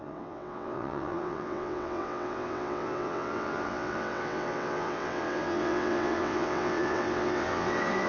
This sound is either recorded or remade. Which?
remade